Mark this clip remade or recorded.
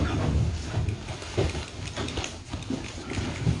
recorded